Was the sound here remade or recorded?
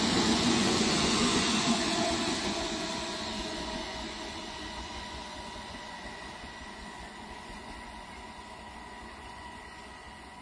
remade